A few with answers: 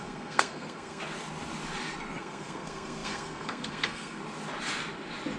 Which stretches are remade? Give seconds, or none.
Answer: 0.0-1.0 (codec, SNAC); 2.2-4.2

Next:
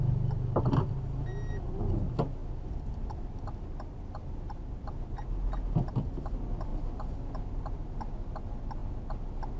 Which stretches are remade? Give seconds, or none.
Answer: 2.4-4.9 (vocoder, BigVGAN v2)